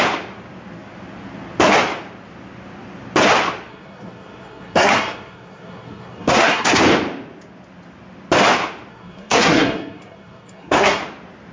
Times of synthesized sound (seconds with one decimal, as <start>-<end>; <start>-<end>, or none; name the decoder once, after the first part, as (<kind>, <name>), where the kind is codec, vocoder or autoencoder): 3.7-6.8 (codec, SNAC); 8.9-11.0